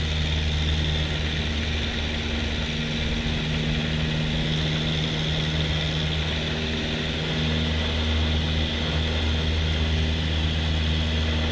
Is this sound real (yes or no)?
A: yes